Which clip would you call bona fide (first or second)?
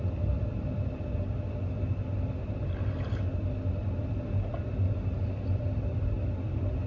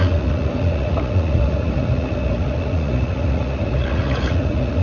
first